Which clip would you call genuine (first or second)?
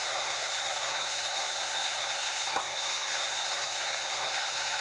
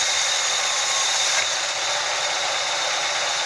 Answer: second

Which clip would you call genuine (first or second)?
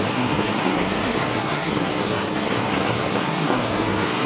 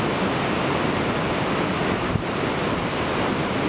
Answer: second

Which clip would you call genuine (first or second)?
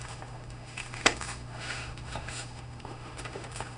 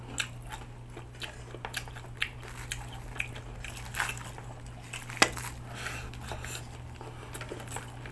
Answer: second